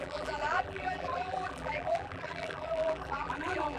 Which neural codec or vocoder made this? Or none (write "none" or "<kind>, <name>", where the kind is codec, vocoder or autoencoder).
vocoder, BigVGAN v2